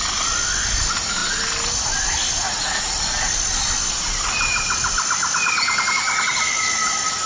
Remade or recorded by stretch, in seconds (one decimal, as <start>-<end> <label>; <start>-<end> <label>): 0.0-7.3 recorded